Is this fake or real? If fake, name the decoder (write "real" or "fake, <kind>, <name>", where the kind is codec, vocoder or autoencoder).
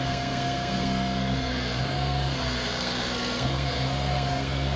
fake, codec, SNAC